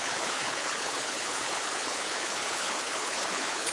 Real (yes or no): no